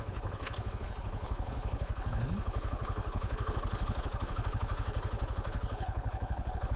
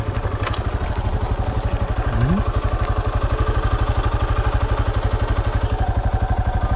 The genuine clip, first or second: second